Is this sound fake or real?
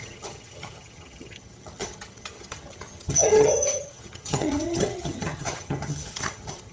fake